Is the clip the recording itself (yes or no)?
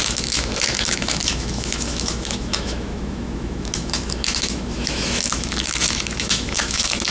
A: no